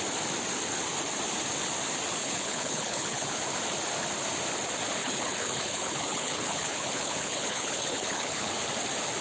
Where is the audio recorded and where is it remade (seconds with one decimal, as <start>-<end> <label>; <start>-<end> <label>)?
0.0-2.2 recorded; 2.2-3.4 remade; 3.4-5.0 recorded; 5.0-8.5 remade; 8.5-9.2 recorded